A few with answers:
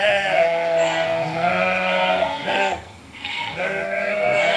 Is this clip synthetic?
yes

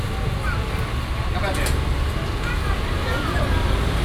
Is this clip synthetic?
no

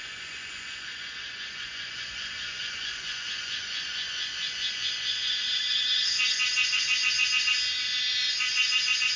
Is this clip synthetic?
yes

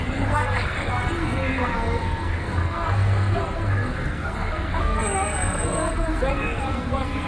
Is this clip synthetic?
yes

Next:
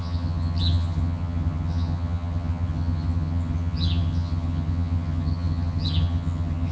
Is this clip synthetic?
yes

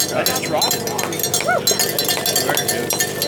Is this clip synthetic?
no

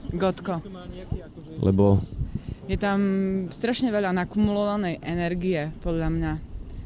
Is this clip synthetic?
no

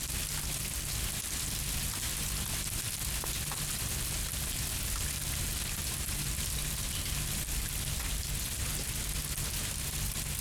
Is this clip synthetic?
no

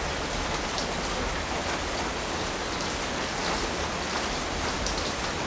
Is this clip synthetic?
no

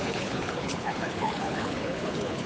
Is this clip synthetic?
yes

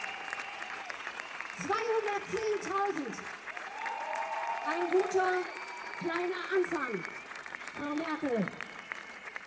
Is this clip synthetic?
yes